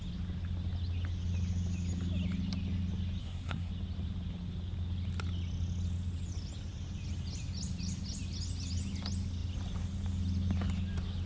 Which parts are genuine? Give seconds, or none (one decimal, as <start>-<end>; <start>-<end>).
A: 0.0-3.2; 3.7-11.3